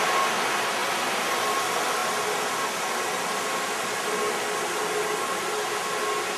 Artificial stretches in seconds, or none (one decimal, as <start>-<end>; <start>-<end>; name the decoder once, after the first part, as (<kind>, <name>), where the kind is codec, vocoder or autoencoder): none

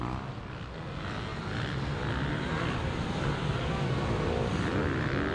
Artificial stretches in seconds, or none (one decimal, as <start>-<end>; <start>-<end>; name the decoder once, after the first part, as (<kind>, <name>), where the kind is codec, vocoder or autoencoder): 1.3-4.5 (vocoder, BigVGAN v2)

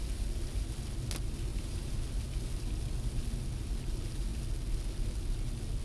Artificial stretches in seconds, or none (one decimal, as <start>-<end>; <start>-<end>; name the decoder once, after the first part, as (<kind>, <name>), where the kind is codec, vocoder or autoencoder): 1.5-2.0 (vocoder, BigVGAN v2)